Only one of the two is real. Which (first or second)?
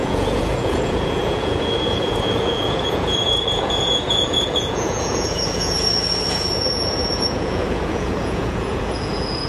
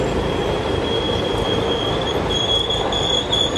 second